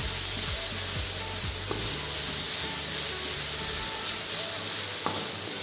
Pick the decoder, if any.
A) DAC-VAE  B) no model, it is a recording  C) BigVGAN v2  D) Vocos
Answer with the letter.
B